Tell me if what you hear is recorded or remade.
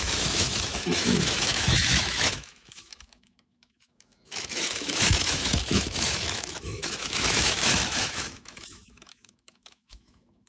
remade